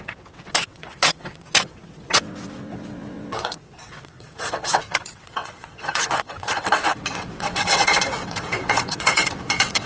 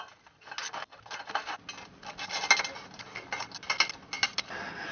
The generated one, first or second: first